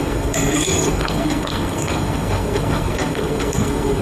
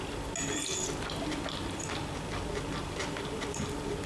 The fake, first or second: first